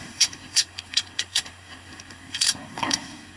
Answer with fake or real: fake